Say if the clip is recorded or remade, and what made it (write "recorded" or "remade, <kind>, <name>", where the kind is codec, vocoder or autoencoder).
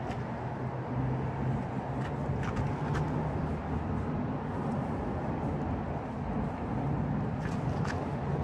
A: recorded